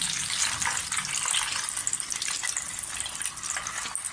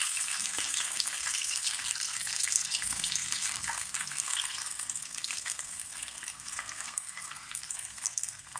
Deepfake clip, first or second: second